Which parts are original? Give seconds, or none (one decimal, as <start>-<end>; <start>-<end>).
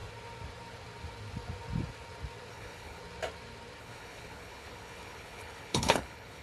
0.0-2.5; 3.0-3.8